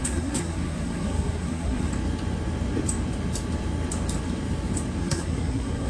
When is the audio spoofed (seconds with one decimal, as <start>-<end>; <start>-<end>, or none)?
0.0-1.9; 5.0-5.9